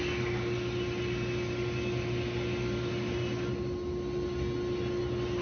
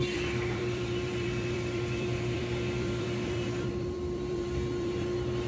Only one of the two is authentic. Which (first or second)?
first